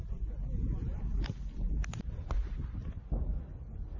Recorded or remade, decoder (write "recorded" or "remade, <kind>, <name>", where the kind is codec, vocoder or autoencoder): recorded